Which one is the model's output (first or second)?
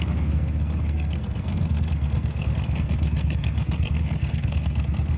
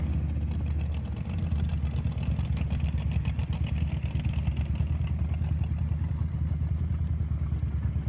first